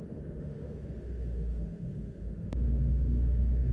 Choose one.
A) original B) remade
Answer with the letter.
B